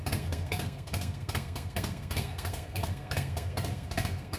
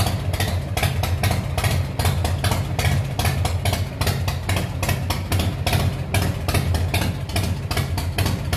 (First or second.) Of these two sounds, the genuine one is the second